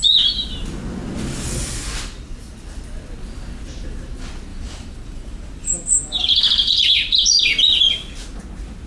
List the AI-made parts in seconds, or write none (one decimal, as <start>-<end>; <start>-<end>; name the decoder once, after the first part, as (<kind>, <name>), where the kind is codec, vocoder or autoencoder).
4.5-7.4 (vocoder, BigVGAN v2)